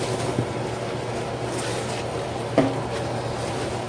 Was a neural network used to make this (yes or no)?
no